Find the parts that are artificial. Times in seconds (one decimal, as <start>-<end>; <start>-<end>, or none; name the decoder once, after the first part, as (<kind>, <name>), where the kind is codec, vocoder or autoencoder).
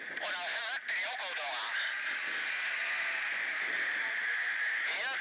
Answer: none